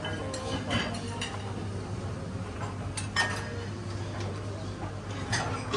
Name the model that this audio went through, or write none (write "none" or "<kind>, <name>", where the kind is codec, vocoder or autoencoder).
none